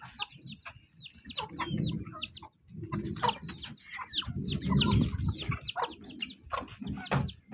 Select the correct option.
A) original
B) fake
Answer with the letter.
A